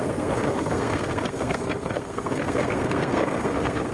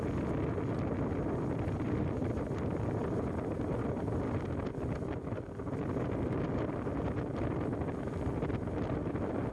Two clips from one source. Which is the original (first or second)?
second